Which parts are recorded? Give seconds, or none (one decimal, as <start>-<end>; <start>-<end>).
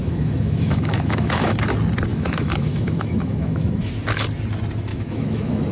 1.5-2.1; 3.9-4.9